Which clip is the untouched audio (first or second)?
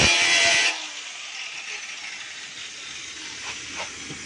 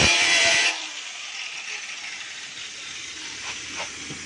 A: first